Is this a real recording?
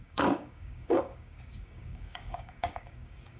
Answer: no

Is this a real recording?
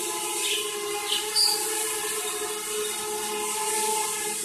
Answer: yes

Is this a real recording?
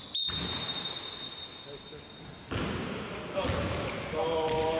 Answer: yes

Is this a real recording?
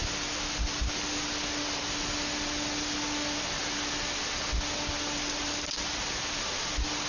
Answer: yes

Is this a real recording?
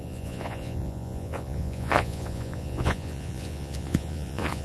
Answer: no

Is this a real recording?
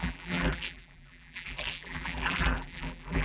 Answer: no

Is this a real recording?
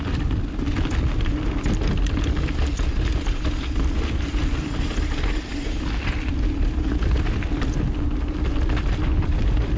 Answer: yes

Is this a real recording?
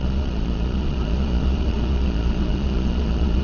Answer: no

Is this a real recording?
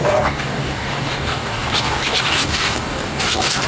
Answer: no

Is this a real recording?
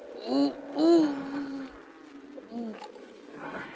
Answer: yes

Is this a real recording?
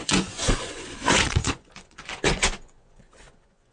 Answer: no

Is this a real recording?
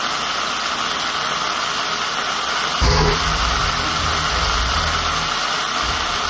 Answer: yes